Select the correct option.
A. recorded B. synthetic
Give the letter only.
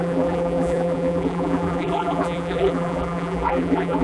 B